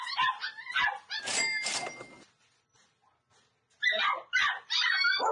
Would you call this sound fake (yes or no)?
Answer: no